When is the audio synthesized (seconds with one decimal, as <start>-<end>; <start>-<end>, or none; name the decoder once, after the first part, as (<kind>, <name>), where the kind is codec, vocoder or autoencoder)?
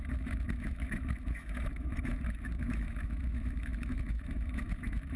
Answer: 0.0-5.2 (autoencoder, DAC-VAE)